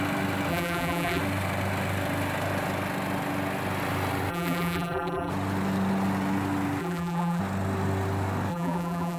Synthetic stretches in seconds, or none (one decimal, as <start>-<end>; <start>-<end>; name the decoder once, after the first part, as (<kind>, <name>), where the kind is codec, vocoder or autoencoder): 0.5-1.2 (vocoder, BigVGAN v2); 4.3-5.3; 6.8-7.4; 8.5-9.2